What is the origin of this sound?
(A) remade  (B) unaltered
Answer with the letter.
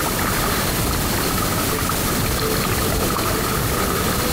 B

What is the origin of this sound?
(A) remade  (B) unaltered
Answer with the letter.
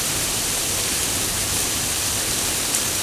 B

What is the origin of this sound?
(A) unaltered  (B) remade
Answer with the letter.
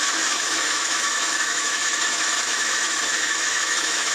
B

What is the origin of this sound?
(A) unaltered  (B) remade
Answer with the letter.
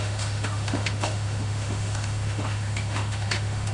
B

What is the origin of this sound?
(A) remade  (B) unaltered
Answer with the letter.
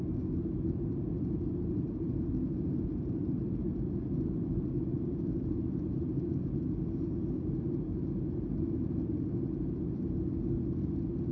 B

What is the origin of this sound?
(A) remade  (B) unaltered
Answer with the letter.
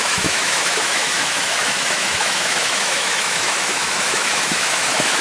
A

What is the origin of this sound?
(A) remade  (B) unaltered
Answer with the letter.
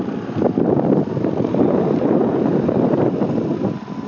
B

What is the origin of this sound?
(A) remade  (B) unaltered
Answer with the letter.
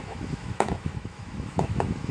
A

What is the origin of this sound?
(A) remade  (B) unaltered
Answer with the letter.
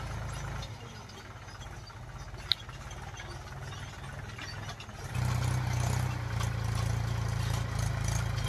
B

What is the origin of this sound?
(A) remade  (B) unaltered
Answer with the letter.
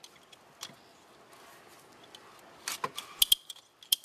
B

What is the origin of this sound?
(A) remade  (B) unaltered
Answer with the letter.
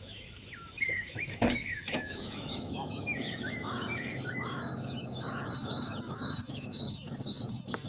A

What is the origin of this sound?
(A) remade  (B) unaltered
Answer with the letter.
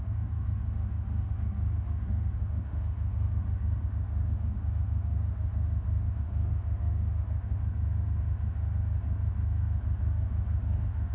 A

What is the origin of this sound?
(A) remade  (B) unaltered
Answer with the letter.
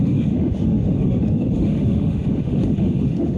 A